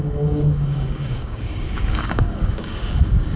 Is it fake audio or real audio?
fake